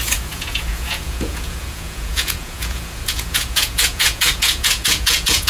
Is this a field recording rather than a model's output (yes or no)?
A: no